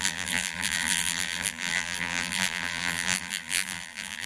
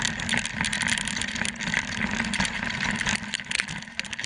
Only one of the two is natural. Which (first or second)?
second